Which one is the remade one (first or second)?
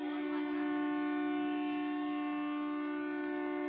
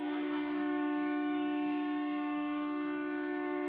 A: second